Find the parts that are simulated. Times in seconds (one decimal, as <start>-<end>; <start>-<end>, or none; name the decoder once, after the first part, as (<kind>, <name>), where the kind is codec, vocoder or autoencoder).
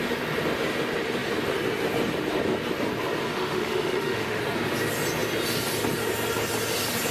3.3-4.4 (autoencoder, DAC-VAE)